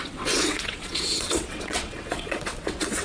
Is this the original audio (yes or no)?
no